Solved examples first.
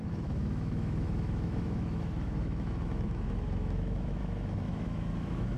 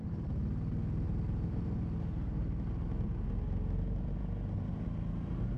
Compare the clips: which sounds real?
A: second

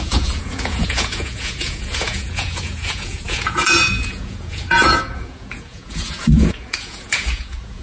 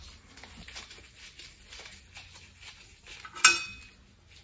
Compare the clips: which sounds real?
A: second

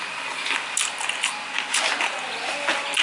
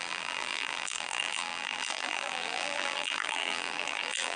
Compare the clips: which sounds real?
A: first